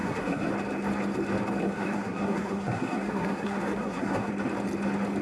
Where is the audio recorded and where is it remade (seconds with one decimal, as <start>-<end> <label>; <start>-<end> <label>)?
0.0-0.5 remade; 0.5-1.6 recorded; 1.6-4.3 remade; 4.3-5.2 recorded